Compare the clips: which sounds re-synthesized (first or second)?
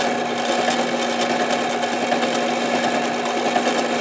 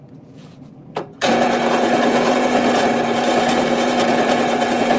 second